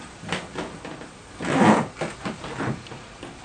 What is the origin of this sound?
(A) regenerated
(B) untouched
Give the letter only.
B